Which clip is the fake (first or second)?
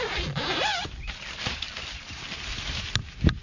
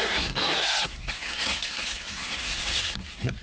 second